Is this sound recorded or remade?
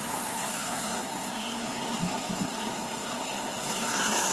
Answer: remade